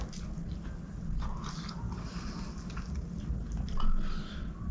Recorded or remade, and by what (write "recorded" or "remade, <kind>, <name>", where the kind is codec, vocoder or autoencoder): recorded